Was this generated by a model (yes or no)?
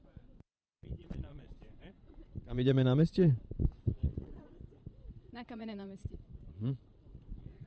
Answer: yes